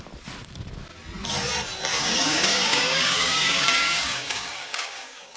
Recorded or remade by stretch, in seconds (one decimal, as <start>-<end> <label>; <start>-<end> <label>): 0.0-1.9 recorded; 1.9-5.4 remade